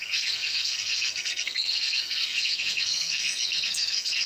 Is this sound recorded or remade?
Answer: remade